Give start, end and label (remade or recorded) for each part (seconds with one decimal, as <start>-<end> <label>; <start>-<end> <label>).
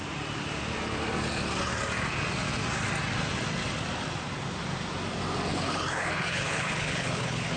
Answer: 0.0-5.5 recorded; 5.5-7.6 remade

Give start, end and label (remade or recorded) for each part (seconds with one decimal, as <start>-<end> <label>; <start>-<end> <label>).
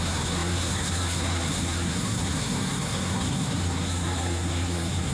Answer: 0.0-5.1 remade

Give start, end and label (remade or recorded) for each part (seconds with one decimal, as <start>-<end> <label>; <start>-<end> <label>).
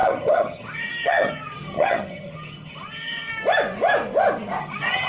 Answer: 0.0-3.3 remade; 3.3-4.6 recorded; 4.6-5.1 remade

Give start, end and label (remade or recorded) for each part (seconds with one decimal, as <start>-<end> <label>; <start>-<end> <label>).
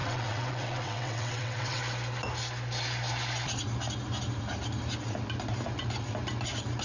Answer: 0.0-1.8 remade; 1.8-6.8 recorded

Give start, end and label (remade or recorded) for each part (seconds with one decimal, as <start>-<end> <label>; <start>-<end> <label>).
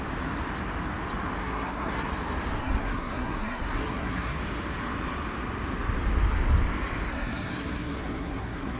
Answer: 0.0-1.4 recorded; 1.4-2.1 remade; 2.1-2.6 recorded; 2.6-4.4 remade; 4.4-7.1 recorded; 7.1-8.8 remade